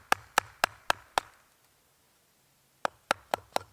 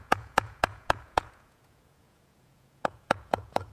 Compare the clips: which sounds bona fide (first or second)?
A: first